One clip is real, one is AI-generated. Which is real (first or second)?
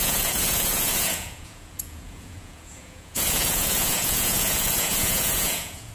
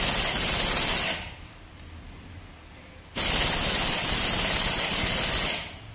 second